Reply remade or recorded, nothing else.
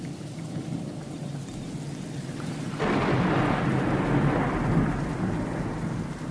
recorded